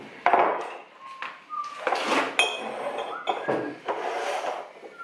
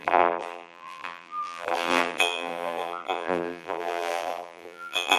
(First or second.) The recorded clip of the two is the first